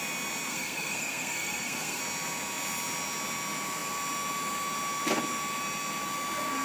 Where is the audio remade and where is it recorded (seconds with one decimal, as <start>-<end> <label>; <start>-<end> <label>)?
0.0-0.5 recorded; 0.5-2.0 remade; 2.0-6.6 recorded